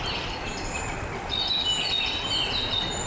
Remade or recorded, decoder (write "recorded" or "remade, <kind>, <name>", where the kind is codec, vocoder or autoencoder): recorded